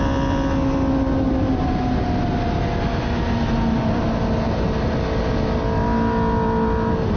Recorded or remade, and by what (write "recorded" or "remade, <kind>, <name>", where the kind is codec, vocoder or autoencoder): recorded